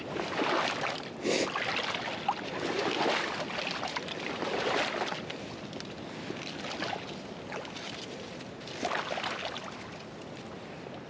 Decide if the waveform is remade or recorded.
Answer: recorded